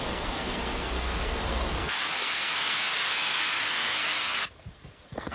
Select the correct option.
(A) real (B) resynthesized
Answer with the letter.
B